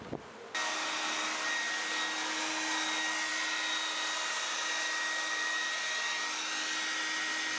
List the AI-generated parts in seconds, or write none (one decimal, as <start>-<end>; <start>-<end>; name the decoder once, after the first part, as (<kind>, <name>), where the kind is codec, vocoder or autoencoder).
none